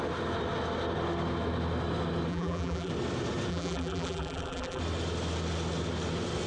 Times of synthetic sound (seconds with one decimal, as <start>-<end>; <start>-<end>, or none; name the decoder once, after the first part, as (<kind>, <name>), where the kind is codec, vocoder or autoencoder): 2.3-2.9 (vocoder, BigVGAN v2); 3.5-4.8